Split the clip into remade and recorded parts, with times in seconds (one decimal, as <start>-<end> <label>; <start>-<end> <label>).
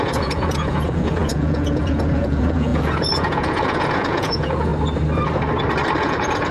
0.0-4.7 remade; 4.7-6.0 recorded; 6.0-6.5 remade